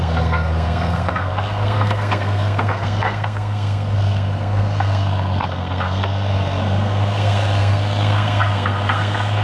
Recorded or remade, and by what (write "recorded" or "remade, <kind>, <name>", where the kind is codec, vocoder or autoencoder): remade, codec, SNAC